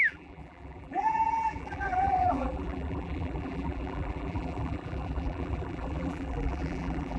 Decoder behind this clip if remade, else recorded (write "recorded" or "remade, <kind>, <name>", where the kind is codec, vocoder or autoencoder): remade, vocoder, BigVGAN v2